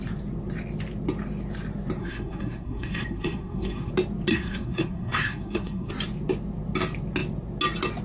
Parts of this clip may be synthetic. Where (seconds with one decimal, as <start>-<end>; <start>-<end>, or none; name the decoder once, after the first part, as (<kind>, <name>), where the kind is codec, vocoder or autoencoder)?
2.0-3.9 (codec, SNAC); 4.3-5.9